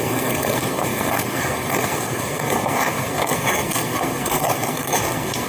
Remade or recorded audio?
remade